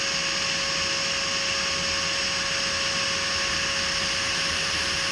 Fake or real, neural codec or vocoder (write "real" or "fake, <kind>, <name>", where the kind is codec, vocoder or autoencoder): real